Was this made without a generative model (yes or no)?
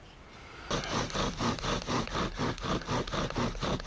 yes